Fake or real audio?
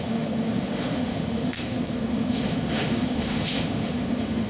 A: fake